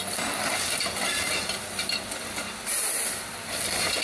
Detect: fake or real real